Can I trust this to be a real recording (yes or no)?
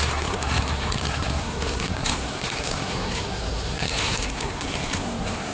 no